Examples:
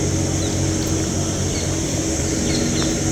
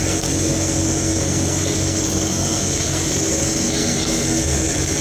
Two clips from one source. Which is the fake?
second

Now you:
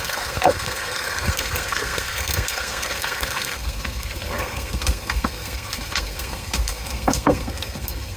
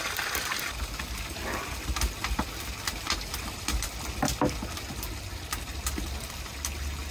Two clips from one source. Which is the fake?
first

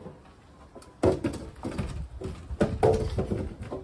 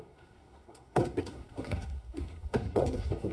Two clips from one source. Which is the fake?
second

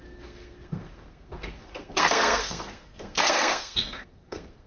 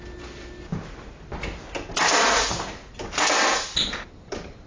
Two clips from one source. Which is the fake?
first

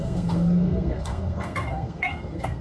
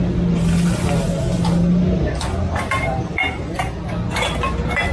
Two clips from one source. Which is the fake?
first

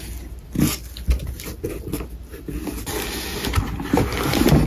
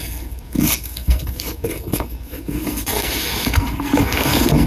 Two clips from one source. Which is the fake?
second